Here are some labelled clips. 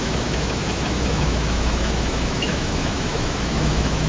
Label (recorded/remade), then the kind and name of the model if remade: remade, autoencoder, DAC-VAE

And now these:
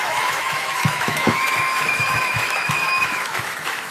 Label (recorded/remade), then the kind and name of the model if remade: remade, autoencoder, DAC-VAE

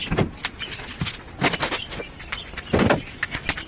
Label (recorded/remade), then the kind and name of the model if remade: recorded